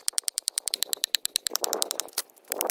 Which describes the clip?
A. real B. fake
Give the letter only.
B